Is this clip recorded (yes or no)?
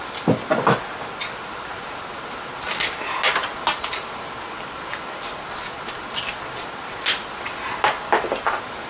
yes